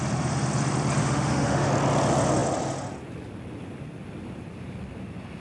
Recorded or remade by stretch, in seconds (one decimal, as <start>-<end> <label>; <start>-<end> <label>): 0.0-1.0 recorded; 1.0-1.7 remade; 1.7-5.4 recorded